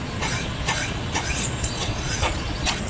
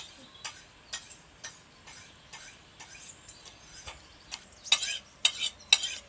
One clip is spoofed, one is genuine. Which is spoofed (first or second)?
first